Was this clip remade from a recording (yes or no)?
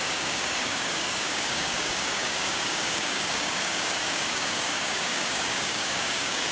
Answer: yes